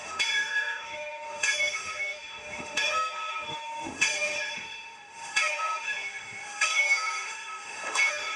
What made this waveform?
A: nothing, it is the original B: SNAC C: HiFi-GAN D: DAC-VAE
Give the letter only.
D